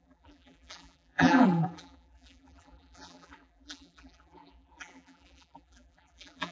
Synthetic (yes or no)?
yes